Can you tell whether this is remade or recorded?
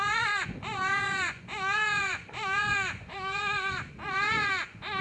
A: remade